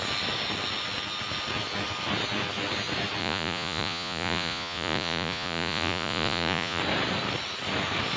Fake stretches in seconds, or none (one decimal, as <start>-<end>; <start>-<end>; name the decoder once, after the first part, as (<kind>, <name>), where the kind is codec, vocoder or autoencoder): 3.2-6.8 (vocoder, Vocos)